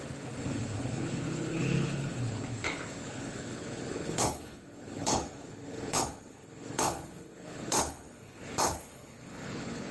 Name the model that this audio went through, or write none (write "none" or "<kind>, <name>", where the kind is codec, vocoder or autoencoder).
codec, HILCodec